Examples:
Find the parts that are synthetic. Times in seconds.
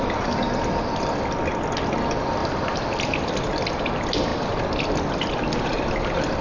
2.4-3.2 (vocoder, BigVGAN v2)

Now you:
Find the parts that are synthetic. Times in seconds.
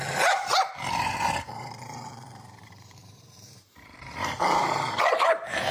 0.0-5.7 (vocoder, BigVGAN v2)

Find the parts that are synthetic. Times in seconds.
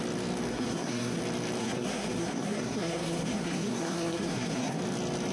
0.5-1.2 (codec, SNAC); 1.6-4.8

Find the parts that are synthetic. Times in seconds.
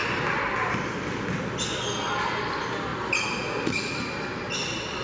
none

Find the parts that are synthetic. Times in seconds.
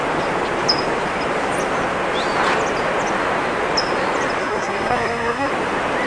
4.4-5.5 (codec, SNAC)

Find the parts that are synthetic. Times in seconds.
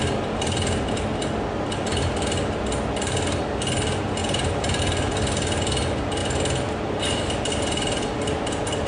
none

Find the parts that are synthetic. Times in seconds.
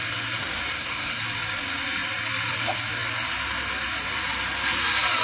0.7-1.2 (codec, SNAC)